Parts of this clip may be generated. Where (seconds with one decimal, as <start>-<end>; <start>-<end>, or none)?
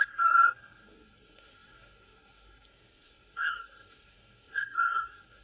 0.0-5.4